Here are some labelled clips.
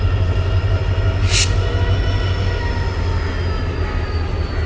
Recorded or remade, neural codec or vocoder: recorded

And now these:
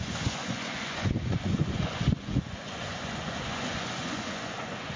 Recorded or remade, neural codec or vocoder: remade, vocoder, Vocos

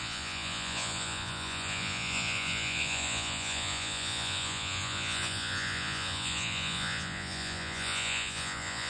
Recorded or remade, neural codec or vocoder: remade, vocoder, Vocos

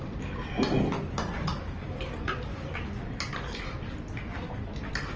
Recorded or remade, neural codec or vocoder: recorded